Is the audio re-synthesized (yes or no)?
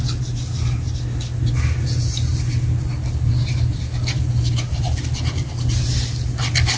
no